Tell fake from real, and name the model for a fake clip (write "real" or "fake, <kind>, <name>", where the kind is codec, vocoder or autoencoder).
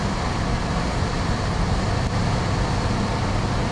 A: real